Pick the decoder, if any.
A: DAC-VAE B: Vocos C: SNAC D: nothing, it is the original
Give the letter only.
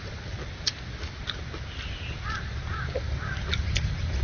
D